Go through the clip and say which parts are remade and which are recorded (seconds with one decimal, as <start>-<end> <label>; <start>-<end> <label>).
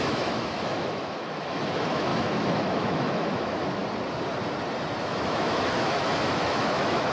0.0-3.8 remade; 3.8-5.0 recorded; 5.0-7.1 remade